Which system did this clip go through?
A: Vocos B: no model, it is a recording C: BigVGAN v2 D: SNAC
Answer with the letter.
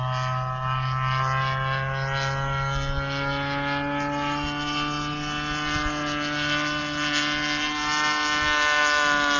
B